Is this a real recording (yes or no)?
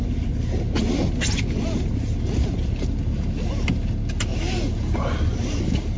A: yes